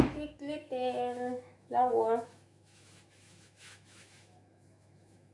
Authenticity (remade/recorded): remade